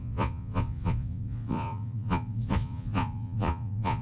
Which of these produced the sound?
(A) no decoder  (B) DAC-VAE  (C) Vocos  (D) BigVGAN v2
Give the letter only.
C